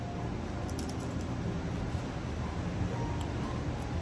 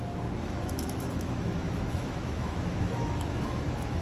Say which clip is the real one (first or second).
first